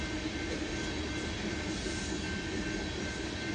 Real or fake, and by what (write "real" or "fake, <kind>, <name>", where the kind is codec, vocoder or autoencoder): real